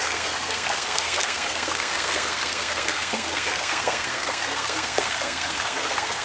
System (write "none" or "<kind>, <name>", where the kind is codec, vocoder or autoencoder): codec, SNAC